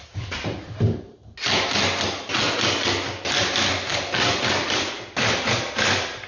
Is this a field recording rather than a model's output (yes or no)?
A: yes